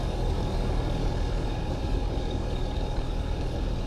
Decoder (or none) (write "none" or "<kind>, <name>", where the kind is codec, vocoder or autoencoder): codec, DAC